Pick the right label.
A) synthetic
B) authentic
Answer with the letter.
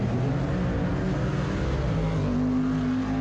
B